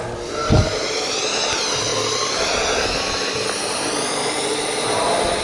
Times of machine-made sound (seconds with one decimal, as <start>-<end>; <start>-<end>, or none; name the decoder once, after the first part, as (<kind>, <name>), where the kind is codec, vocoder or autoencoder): none